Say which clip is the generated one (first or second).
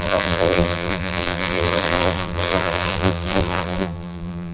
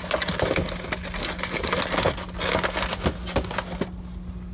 first